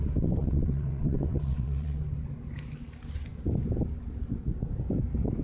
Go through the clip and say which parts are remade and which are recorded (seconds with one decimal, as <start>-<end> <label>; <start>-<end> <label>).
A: 0.0-0.4 recorded; 0.4-2.0 remade; 2.0-5.4 recorded